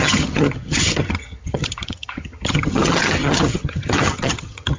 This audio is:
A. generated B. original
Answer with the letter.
A